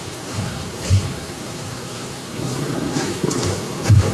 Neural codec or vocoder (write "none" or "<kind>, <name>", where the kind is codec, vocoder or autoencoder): codec, SNAC